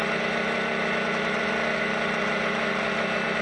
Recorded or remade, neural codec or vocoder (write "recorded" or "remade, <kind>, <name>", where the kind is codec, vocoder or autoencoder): recorded